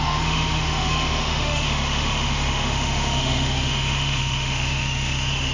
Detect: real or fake fake